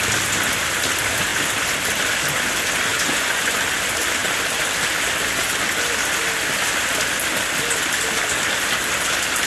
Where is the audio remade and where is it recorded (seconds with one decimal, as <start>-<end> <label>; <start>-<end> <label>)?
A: 0.0-2.9 recorded; 2.9-3.6 remade; 3.6-9.5 recorded